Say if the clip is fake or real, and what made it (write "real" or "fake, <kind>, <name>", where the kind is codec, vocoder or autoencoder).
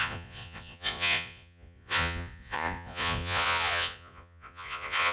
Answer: fake, vocoder, Vocos